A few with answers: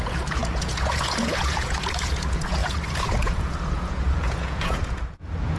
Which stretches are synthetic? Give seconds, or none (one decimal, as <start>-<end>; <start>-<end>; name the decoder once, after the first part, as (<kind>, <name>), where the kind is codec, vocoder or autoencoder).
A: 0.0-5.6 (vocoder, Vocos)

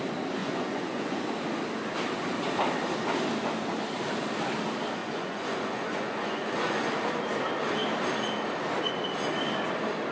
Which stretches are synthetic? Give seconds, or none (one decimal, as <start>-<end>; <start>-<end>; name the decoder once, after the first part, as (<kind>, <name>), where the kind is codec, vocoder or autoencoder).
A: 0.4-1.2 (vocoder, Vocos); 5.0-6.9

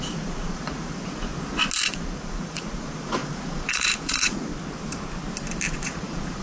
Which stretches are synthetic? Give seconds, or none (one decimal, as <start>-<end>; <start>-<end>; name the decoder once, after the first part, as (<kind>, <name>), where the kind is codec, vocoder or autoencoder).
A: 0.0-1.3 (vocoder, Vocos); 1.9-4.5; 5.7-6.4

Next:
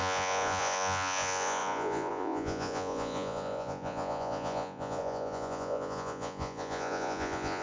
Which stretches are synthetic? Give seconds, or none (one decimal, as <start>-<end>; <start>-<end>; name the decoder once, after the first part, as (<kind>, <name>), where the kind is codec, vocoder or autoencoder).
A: 0.0-7.6 (vocoder, Vocos)

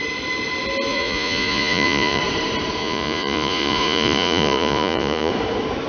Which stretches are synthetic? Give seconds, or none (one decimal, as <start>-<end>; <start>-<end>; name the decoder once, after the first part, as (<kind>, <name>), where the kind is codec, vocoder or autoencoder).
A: 0.9-2.2 (vocoder, Vocos); 2.8-5.3

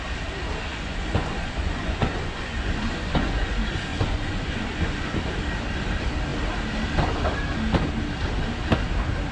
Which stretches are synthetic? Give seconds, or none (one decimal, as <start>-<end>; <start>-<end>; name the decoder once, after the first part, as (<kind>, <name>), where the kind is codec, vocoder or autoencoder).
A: 0.7-3.5 (vocoder, Vocos); 3.9-5.2